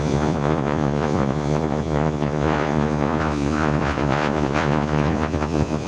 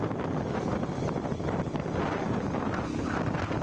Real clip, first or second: second